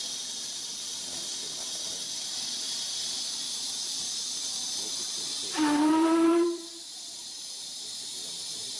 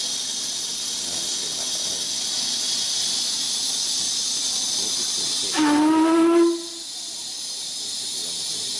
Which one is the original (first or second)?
second